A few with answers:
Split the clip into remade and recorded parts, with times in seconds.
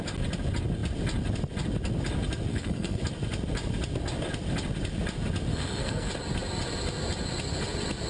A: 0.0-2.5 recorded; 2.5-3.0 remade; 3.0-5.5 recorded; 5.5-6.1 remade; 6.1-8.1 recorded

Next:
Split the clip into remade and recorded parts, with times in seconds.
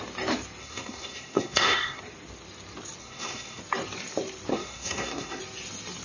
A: 0.0-0.6 recorded; 0.6-2.0 remade; 2.0-3.0 recorded; 3.0-3.6 remade; 3.6-4.5 recorded; 4.5-5.4 remade; 5.4-6.0 recorded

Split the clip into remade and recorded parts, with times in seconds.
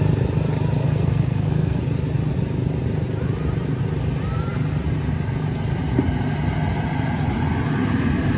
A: 0.0-0.8 recorded; 0.8-1.8 remade; 1.8-8.4 recorded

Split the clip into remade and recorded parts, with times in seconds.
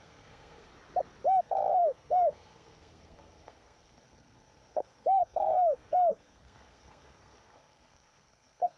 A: 0.0-0.7 remade; 0.7-1.4 recorded; 1.4-8.8 remade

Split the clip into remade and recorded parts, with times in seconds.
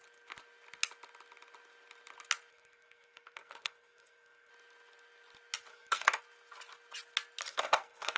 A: 0.0-2.5 recorded; 2.5-4.5 remade; 4.5-5.7 recorded; 5.7-6.2 remade; 6.2-7.5 recorded; 7.5-8.2 remade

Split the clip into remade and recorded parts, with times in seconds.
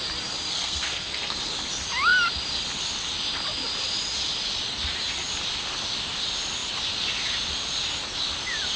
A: 0.0-0.5 recorded; 0.5-1.4 remade; 1.4-8.8 recorded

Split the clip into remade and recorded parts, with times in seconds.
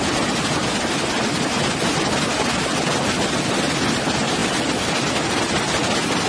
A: 0.0-6.3 recorded